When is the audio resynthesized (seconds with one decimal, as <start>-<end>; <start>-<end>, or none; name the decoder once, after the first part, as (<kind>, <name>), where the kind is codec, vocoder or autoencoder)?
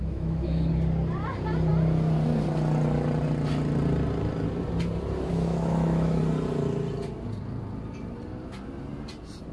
0.0-0.7 (autoencoder, DAC-VAE); 5.3-6.2